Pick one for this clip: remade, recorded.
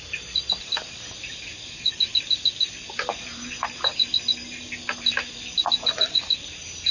recorded